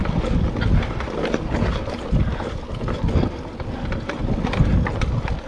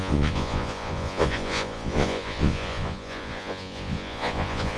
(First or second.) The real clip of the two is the first